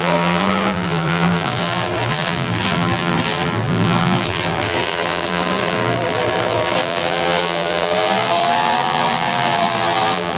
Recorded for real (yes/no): no